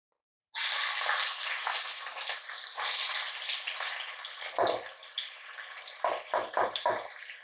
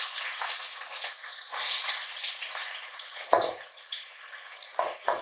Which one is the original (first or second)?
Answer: first